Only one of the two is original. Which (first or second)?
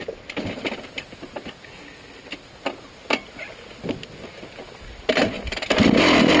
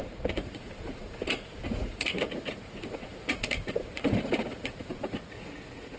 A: first